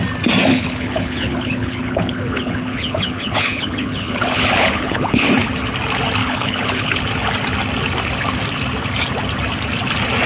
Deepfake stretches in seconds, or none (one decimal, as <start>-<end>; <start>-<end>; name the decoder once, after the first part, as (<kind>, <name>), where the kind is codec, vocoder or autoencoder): 0.5-5.3 (codec, HILCodec); 6.2-7.0